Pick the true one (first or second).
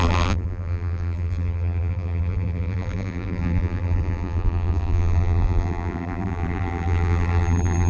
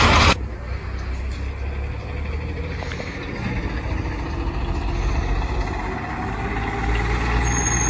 second